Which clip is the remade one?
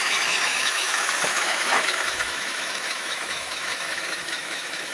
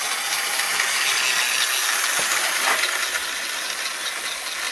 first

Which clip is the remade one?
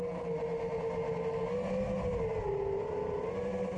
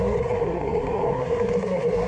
second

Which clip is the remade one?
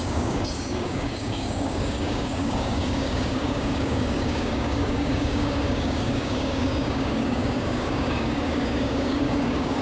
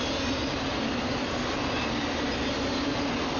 first